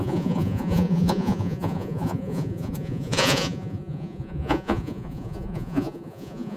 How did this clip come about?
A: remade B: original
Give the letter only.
A